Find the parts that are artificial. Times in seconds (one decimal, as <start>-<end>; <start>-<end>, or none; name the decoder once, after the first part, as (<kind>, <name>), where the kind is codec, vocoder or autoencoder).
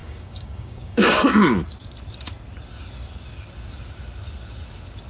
0.0-1.2 (codec, DAC)